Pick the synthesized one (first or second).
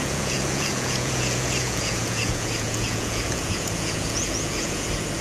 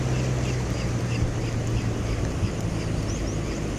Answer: first